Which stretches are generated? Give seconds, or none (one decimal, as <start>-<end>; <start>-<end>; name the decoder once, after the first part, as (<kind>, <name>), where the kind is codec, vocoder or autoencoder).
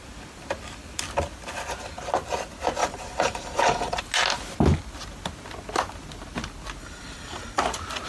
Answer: 2.8-4.0 (vocoder, BigVGAN v2); 6.8-7.6